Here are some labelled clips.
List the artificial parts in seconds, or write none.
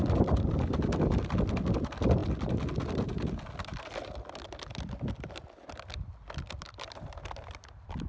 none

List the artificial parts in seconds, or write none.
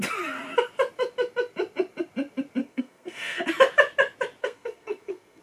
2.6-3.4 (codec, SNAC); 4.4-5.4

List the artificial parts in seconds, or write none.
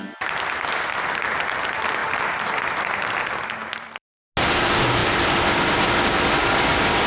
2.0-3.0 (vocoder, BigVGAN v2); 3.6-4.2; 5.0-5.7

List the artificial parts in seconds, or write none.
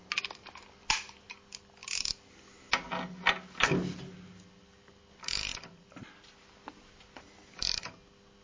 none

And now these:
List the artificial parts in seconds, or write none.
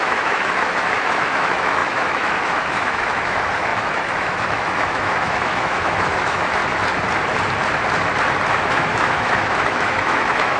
0.0-6.6 (autoencoder, DAC-VAE); 8.7-10.6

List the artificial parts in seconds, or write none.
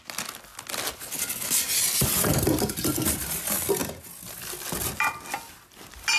none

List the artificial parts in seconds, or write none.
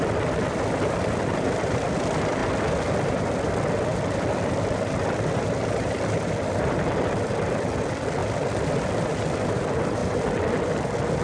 0.0-2.4 (vocoder, BigVGAN v2); 3.3-11.2